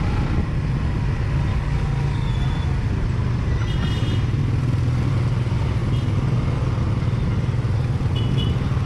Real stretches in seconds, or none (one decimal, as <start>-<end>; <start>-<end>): 0.0-1.5; 2.3-8.9